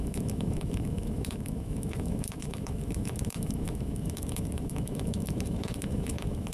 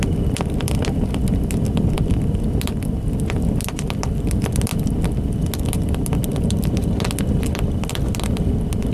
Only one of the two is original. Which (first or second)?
second